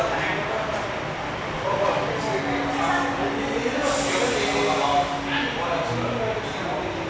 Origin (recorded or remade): recorded